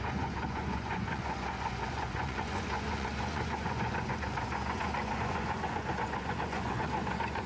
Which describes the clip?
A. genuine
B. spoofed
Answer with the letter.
B